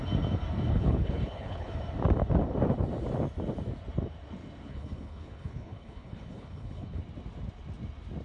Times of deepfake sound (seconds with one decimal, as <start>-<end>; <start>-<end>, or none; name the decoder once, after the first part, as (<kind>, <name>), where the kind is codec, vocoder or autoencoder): 0.7-1.7 (codec, HILCodec); 4.7-7.0